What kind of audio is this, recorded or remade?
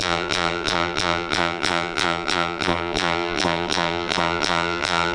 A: remade